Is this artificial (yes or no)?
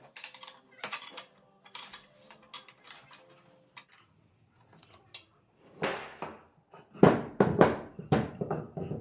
no